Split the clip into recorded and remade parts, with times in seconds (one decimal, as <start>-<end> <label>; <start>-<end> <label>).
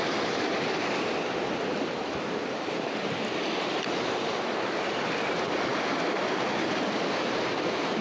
0.0-8.0 recorded